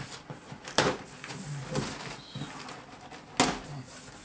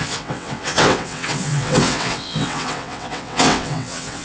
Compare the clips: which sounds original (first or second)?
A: first